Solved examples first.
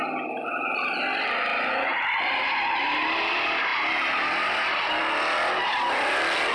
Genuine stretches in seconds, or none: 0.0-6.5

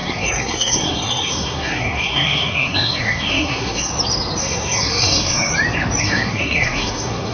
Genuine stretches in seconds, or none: 3.9-4.4; 5.5-6.0